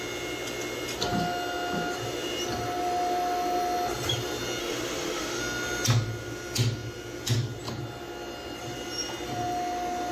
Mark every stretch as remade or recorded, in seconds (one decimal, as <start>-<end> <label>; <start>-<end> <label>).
0.0-4.6 recorded; 4.6-5.4 remade; 5.4-10.1 recorded